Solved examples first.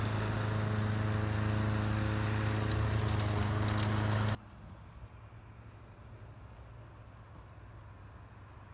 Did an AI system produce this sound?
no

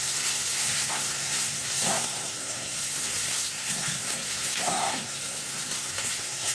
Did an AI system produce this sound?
yes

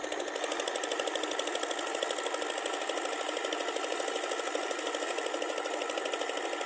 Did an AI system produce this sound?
no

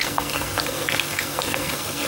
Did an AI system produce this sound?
yes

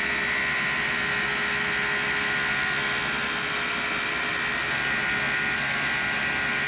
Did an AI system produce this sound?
no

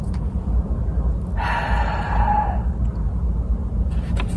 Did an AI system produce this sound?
no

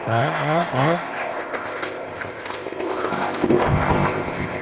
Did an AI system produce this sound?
yes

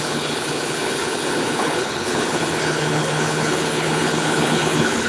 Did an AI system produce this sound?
yes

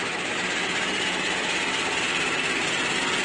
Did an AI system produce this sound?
no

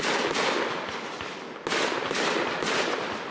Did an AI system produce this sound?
no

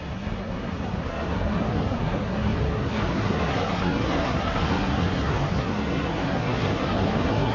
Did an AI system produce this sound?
yes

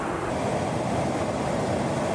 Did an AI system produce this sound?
no